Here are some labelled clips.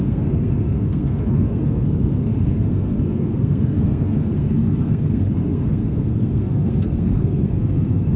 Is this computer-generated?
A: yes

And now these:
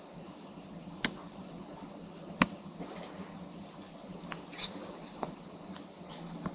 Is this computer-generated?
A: no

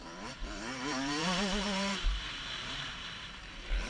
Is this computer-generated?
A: yes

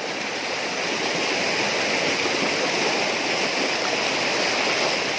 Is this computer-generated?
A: no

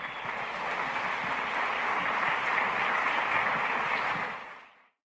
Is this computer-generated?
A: no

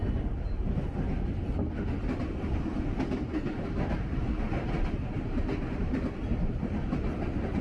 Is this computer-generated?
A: no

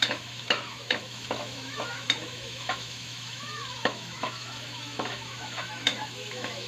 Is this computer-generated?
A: yes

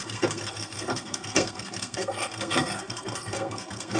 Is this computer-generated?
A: yes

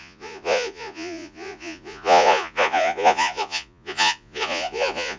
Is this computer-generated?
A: yes